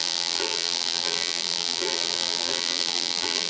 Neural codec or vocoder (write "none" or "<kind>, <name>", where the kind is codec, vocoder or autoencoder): vocoder, BigVGAN v2